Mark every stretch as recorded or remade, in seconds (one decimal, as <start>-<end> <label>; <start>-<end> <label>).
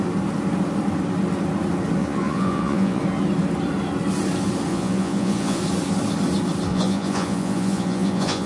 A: 0.0-2.0 recorded; 2.0-3.0 remade; 3.0-4.7 recorded; 4.7-5.6 remade; 5.6-6.7 recorded; 6.7-8.5 remade